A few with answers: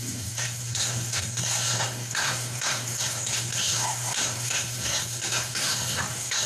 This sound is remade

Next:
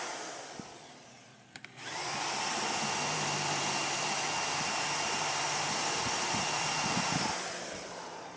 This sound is remade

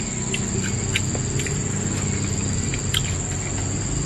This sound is recorded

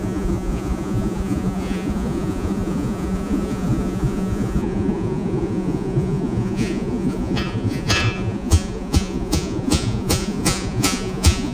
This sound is remade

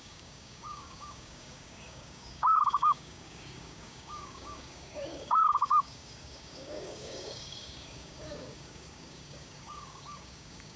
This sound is remade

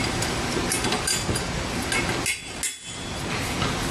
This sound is recorded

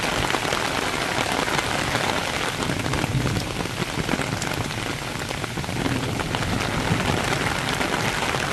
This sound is recorded